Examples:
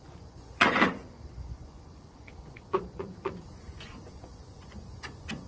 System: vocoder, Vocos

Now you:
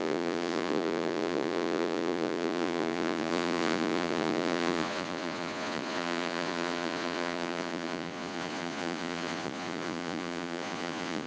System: vocoder, Vocos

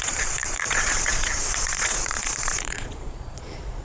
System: vocoder, Vocos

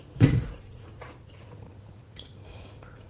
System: vocoder, Vocos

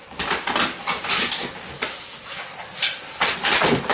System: none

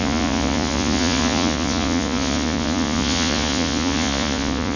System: vocoder, Vocos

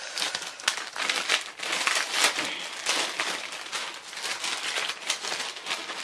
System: none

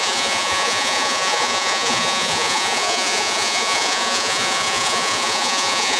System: vocoder, Vocos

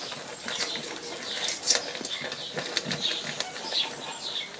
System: none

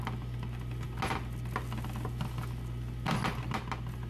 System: none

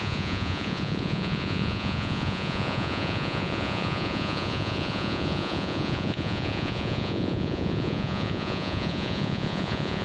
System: vocoder, Vocos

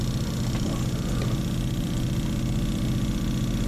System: none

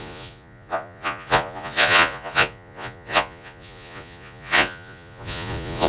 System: vocoder, Vocos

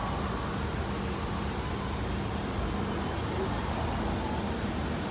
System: none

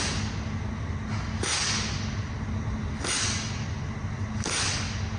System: none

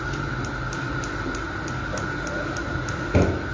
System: none